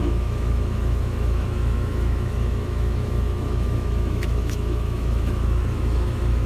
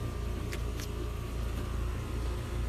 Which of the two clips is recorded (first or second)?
second